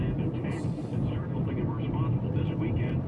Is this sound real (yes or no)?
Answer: yes